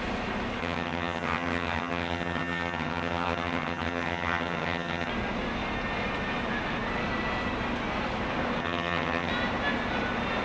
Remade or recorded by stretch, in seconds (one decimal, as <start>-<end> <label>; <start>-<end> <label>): 0.0-0.6 recorded; 0.6-5.1 remade; 5.1-8.6 recorded; 8.6-9.3 remade; 9.3-10.4 recorded